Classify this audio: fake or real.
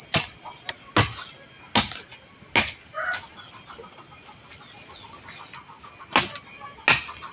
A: real